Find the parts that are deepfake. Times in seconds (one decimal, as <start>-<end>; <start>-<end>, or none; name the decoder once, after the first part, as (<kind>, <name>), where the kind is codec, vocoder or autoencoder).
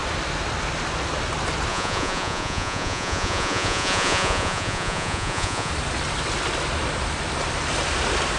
1.7-5.7 (vocoder, Vocos)